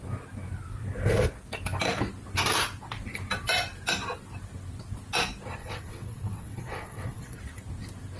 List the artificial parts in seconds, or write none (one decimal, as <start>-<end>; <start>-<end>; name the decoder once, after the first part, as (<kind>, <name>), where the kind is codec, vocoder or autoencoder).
5.6-7.4 (vocoder, WaveNeXt)